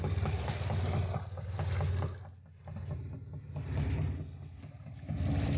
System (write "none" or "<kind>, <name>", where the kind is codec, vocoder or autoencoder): none